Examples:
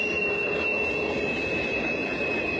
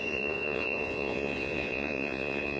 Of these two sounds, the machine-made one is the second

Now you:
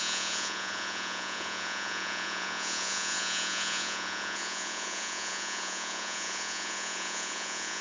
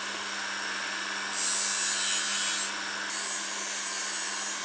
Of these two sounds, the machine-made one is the first